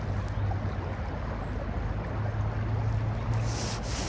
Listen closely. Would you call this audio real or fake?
real